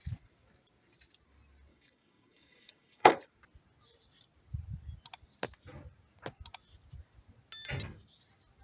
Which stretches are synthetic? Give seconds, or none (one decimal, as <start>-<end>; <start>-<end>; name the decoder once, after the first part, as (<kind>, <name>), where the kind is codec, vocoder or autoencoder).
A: 1.7-3.1 (codec, DAC)